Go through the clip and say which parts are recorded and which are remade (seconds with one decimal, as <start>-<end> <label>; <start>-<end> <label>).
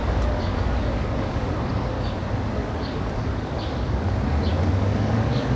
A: 0.0-2.2 remade; 2.2-2.6 recorded; 2.6-4.1 remade; 4.1-4.5 recorded; 4.5-5.6 remade